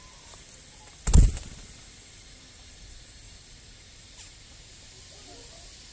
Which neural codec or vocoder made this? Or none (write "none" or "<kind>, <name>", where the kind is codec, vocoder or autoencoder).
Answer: none